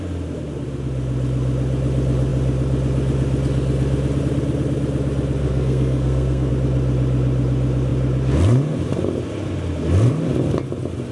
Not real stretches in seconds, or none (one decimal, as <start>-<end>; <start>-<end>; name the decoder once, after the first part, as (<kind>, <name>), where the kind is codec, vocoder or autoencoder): 5.4-6.5 (codec, SNAC)